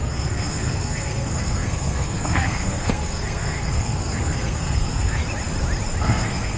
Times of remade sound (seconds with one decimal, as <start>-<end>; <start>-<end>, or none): 0.0-5.2; 6.0-6.6